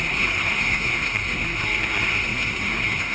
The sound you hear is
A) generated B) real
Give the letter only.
A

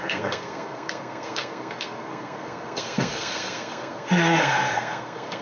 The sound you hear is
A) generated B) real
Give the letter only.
A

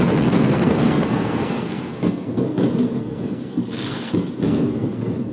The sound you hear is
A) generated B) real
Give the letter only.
A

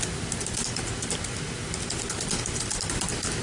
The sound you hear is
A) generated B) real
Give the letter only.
B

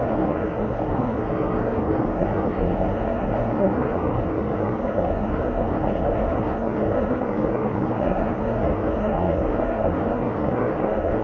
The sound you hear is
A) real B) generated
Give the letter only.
B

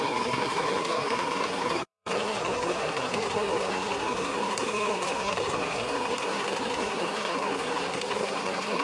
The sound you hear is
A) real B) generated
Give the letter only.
B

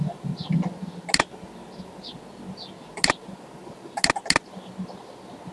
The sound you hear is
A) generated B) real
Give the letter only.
B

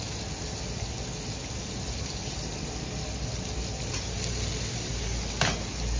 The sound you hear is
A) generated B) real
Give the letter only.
B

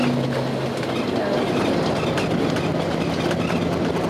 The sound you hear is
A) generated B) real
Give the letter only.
B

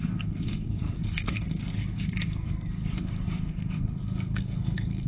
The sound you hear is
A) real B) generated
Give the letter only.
B